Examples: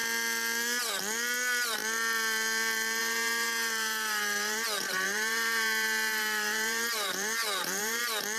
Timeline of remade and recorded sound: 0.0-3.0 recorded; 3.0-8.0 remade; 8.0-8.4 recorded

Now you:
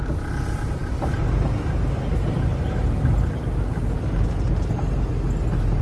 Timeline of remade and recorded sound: 0.0-5.8 recorded

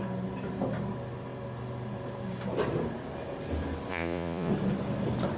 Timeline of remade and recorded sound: 0.0-3.9 recorded; 3.9-4.5 remade; 4.5-5.4 recorded